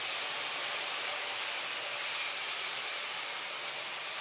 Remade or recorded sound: recorded